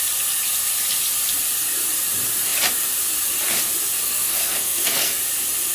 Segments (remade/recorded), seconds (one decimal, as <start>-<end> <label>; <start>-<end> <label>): 0.0-4.0 recorded; 4.0-5.2 remade; 5.2-5.7 recorded